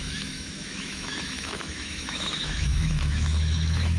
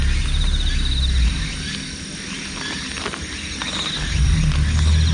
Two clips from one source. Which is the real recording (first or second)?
second